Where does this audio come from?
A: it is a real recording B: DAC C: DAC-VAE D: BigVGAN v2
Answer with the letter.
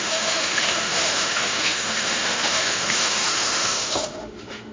C